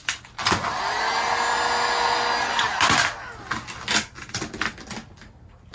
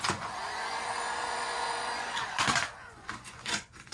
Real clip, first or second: first